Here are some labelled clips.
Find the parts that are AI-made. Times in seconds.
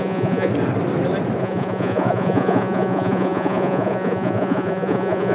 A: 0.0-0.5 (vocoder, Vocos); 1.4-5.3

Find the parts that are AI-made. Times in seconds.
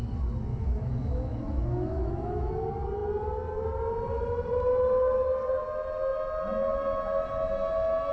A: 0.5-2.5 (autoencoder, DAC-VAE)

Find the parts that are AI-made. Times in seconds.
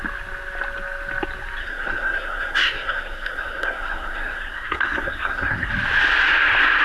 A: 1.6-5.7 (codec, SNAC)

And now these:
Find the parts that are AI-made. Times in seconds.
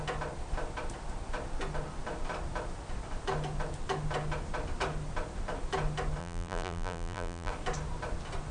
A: 6.2-7.5 (vocoder, BigVGAN v2)